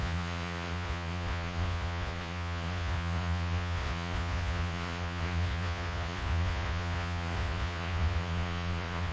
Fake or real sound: fake